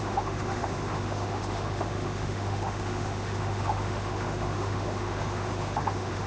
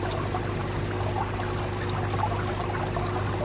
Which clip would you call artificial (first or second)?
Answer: first